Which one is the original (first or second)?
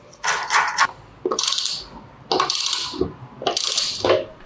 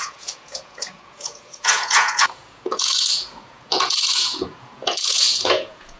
first